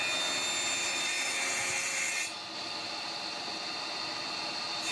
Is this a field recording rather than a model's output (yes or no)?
yes